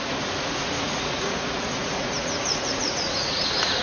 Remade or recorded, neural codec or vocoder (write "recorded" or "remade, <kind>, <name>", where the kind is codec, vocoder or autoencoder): remade, vocoder, Vocos